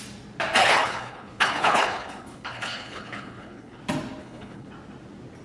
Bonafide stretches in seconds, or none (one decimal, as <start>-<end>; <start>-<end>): 0.0-0.6; 3.8-4.2; 4.7-5.4